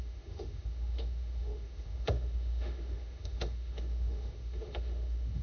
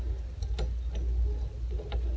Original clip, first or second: second